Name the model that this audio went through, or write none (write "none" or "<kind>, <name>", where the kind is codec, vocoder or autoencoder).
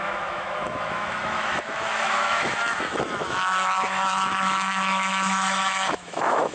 autoencoder, DAC-VAE